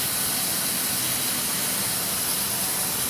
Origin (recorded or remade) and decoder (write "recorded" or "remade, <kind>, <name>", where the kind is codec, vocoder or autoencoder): recorded